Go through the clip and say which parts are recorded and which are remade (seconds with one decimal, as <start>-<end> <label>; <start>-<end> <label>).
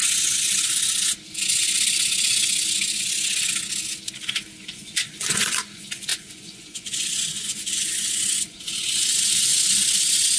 0.0-4.7 recorded; 4.7-9.5 remade; 9.5-10.4 recorded